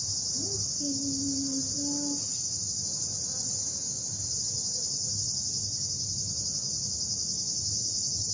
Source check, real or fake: real